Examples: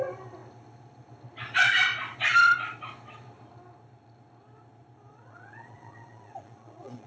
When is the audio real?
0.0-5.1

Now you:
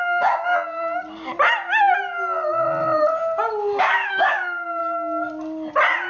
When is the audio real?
0.5-3.8; 4.8-6.1

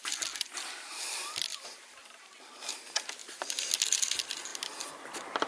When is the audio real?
0.0-1.5; 2.7-3.2; 3.7-4.5